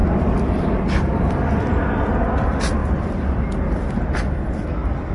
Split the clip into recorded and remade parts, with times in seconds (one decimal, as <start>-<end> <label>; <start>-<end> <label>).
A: 0.0-5.1 recorded